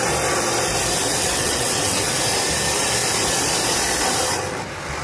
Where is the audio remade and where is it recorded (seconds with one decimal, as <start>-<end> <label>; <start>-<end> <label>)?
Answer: 0.0-1.2 recorded; 1.2-2.2 remade; 2.2-5.0 recorded